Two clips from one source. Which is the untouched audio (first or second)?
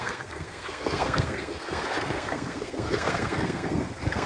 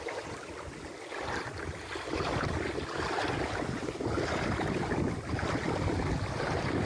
second